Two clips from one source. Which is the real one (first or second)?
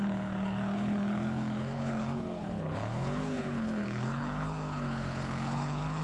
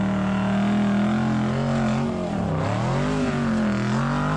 second